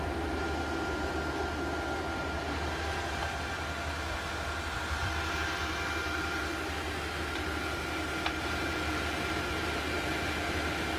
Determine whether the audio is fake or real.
real